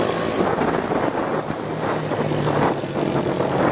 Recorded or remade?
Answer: recorded